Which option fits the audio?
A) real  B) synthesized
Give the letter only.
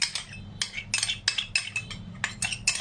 A